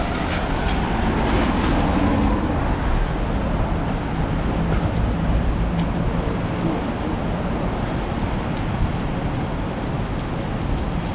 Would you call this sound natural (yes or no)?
yes